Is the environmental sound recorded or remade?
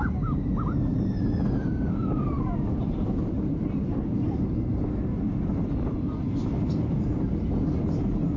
recorded